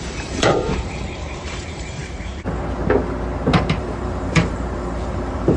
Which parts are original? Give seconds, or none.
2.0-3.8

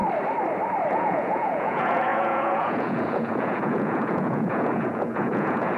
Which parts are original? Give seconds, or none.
0.0-0.9

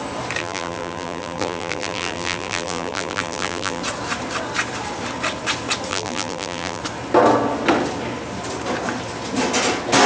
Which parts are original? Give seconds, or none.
0.0-0.4; 3.8-5.9; 6.8-10.1